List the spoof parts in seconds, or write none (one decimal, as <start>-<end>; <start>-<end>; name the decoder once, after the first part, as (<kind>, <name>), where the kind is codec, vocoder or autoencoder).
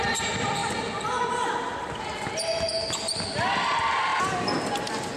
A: 4.1-4.7 (vocoder, BigVGAN v2)